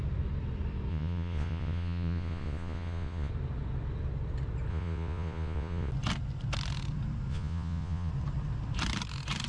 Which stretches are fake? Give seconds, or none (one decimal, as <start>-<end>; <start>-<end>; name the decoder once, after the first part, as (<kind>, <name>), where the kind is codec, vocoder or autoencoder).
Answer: 0.9-3.3 (vocoder, Vocos); 4.7-5.9; 7.3-8.1